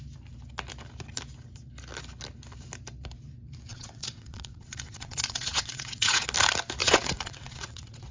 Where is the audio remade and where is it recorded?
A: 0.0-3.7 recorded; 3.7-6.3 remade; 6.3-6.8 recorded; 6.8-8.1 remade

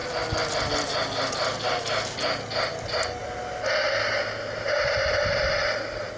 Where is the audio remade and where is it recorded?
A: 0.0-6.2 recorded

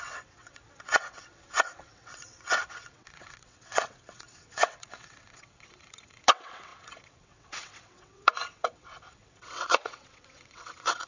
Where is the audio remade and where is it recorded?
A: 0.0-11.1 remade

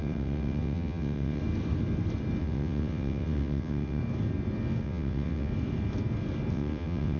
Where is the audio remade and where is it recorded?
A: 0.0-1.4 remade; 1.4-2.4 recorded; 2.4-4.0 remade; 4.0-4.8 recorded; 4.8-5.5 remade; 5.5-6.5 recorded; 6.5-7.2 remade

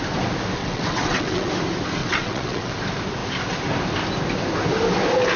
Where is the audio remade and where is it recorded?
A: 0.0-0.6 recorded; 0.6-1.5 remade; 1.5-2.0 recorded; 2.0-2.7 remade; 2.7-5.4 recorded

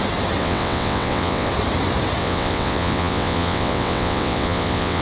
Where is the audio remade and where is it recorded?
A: 0.0-0.4 recorded; 0.4-1.5 remade; 1.5-2.2 recorded; 2.2-5.0 remade

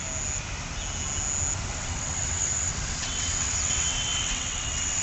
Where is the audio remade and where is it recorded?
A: 0.0-1.7 recorded; 1.7-5.0 remade

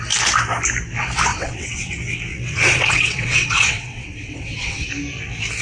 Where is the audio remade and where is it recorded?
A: 0.0-1.3 recorded; 1.3-1.9 remade; 1.9-2.3 recorded; 2.3-4.9 remade; 4.9-5.6 recorded